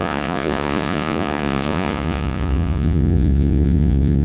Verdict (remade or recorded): remade